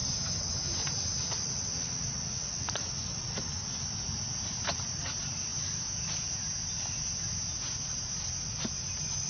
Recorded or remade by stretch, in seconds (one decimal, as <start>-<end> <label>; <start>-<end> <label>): 0.0-9.3 recorded